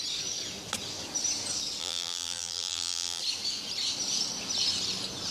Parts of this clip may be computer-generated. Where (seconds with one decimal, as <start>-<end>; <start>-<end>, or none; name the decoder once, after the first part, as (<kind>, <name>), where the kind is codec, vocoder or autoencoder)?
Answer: 1.8-3.2 (vocoder, BigVGAN v2)